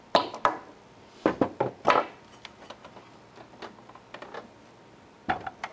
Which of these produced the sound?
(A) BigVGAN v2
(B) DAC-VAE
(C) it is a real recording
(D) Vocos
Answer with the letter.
C